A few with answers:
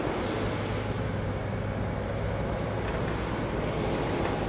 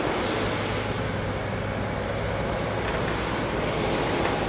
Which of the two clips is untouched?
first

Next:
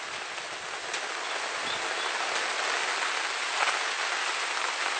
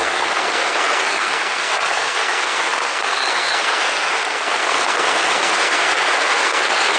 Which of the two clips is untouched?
first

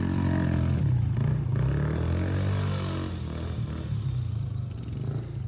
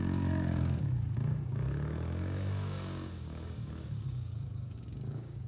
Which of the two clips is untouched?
first